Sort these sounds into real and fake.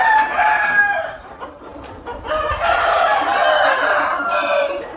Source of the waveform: real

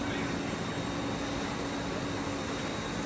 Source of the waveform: real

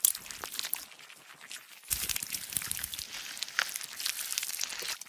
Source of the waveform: real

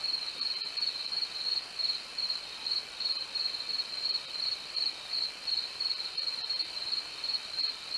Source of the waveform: fake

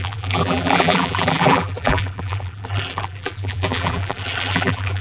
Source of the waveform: fake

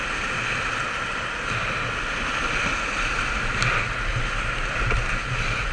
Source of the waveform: real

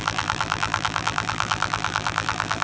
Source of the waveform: fake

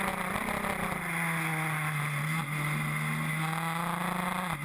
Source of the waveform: real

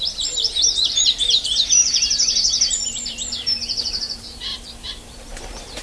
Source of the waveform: fake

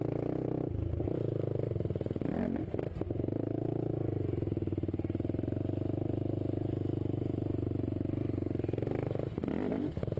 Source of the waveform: real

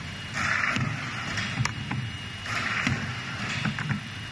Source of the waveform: fake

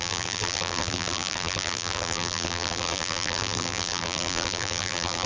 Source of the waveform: fake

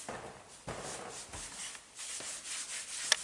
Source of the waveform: real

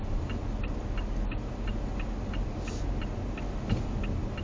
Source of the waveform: real